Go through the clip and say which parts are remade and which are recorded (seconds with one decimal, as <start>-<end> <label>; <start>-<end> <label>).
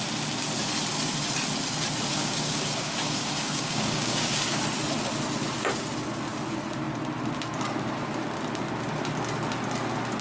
0.0-2.1 recorded; 2.1-4.6 remade; 4.6-10.2 recorded